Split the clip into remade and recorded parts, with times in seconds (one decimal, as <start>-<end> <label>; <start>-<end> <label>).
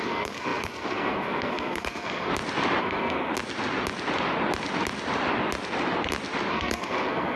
0.0-2.3 remade; 2.3-2.8 recorded; 2.8-3.3 remade; 3.3-6.5 recorded; 6.5-7.4 remade